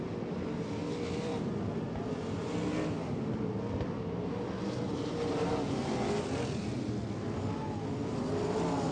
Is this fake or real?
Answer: real